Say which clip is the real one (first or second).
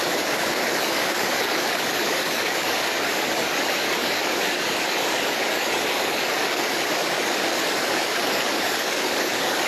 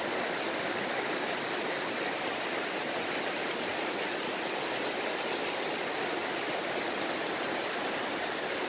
second